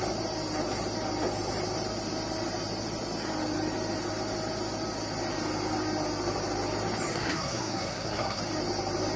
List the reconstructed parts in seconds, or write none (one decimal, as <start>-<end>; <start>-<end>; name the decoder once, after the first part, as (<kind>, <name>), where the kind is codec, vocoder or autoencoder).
7.1-8.4 (codec, SNAC)